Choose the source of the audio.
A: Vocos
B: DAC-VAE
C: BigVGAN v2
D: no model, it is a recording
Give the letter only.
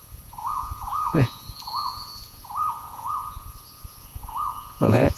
A